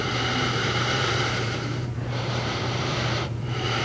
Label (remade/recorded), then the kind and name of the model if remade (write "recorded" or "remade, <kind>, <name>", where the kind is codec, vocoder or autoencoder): remade, vocoder, BigVGAN v2